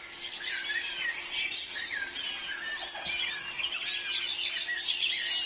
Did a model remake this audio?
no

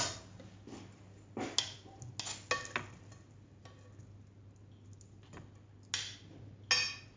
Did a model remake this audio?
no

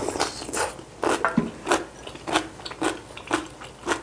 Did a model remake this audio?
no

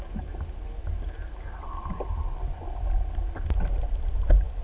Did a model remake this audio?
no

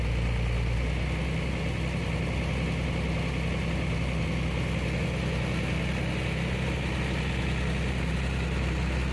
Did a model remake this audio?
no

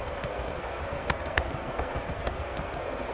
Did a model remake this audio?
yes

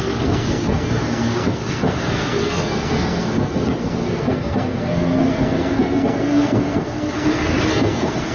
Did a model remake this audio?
yes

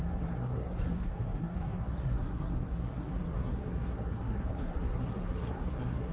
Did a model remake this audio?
yes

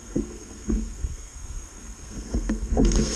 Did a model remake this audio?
yes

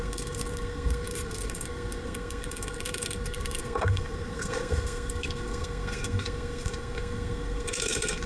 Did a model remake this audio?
yes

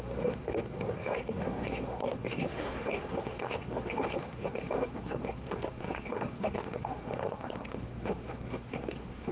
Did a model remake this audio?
yes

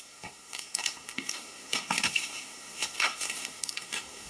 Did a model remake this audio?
yes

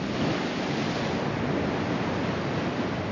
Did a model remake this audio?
no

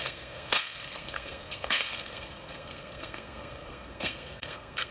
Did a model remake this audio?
yes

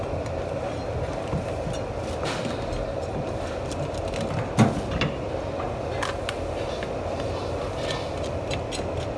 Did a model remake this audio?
no